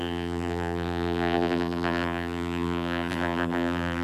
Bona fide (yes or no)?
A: no